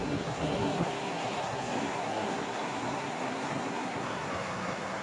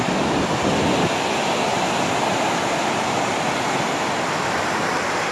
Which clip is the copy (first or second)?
first